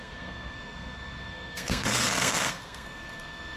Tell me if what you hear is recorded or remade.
remade